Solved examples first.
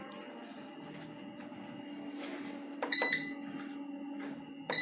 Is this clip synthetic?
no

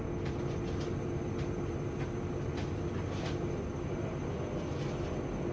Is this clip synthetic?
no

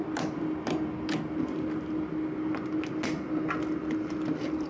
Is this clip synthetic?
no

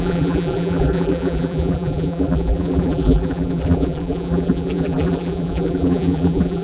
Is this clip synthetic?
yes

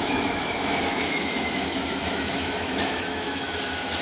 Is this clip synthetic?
yes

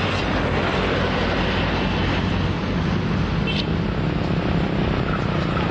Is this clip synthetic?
no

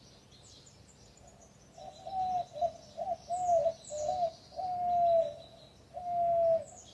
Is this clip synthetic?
no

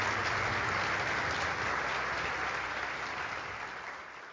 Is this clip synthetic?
no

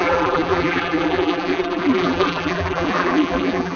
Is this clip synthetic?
yes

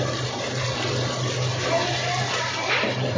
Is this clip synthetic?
no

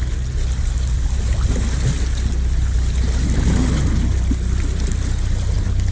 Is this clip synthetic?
no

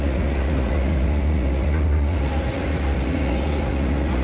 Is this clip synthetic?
yes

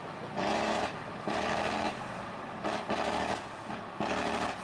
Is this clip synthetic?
no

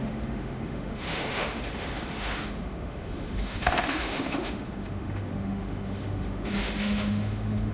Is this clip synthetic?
yes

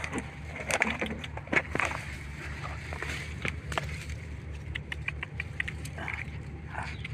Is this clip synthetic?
yes